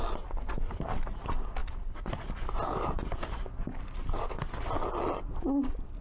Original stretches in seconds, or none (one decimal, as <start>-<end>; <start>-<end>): 0.0-6.0